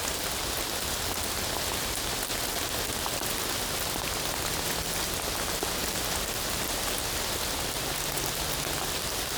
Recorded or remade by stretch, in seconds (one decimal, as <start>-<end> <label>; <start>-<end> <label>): 0.0-9.4 recorded